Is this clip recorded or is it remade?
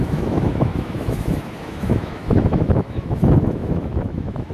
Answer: remade